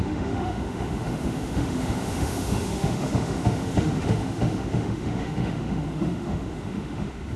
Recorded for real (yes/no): no